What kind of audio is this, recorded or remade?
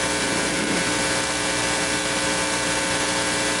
recorded